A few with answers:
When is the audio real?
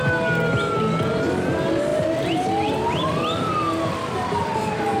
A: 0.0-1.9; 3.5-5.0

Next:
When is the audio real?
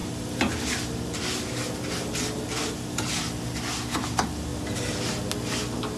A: 0.0-6.0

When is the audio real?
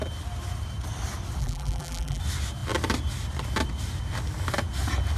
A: 0.0-1.4; 2.2-5.2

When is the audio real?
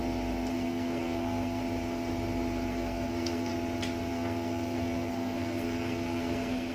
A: 0.0-0.5; 1.6-2.7; 3.5-4.1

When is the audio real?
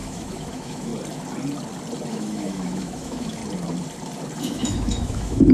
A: 0.9-2.1; 3.4-4.4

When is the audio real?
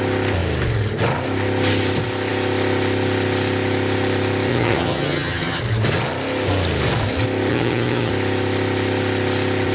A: 0.0-4.5; 5.6-7.5; 8.1-9.7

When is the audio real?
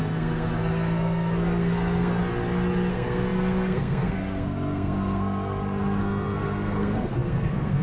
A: 2.2-2.9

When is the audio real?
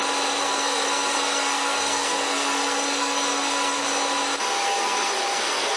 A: 0.0-0.4; 3.9-4.6